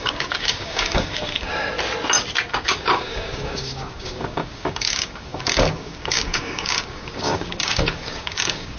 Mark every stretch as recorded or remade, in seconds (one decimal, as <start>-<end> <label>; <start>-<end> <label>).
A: 0.0-1.5 remade; 1.5-2.5 recorded; 2.5-8.8 remade

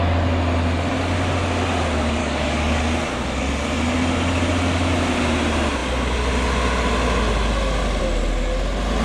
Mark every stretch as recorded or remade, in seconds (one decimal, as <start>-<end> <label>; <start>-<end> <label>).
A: 0.0-2.2 recorded; 2.2-2.8 remade; 2.8-9.0 recorded

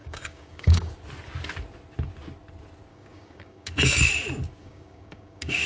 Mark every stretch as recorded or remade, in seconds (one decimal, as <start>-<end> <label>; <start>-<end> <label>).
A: 0.0-0.9 remade; 0.9-2.9 recorded; 2.9-4.1 remade; 4.1-4.6 recorded; 4.6-5.7 remade